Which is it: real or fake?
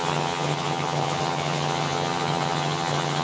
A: fake